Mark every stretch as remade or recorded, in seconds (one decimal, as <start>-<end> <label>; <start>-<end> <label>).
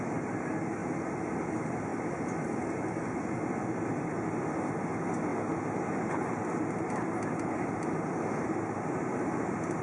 0.0-9.8 recorded